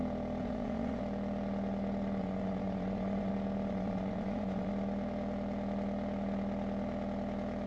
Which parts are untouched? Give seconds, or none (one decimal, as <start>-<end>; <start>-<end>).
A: 0.0-0.4; 1.0-2.2; 3.3-3.7; 4.7-7.7